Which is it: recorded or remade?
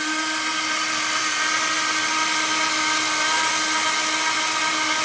recorded